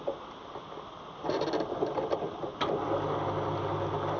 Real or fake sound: real